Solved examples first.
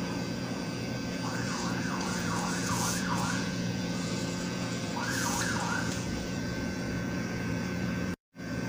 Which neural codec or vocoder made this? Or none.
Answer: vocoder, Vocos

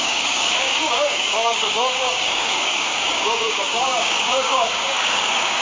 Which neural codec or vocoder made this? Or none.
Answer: codec, DAC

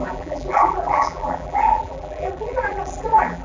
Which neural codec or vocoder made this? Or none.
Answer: vocoder, BigVGAN v2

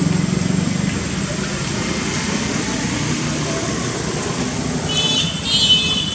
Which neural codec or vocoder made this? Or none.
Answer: none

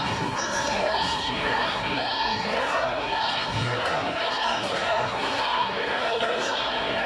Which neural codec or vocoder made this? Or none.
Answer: codec, SNAC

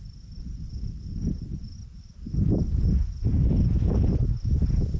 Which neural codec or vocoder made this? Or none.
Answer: none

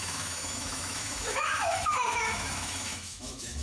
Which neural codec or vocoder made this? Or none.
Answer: autoencoder, DAC-VAE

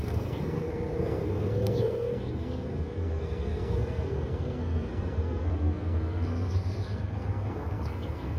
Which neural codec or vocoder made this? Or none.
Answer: codec, SNAC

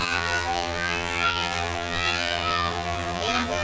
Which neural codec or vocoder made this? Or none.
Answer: vocoder, BigVGAN v2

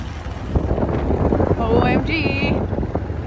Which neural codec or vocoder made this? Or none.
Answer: none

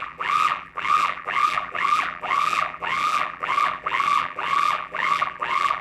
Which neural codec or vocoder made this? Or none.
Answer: vocoder, BigVGAN v2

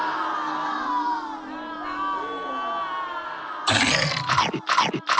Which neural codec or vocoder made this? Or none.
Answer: none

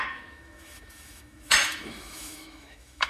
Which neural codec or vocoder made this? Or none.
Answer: autoencoder, DAC-VAE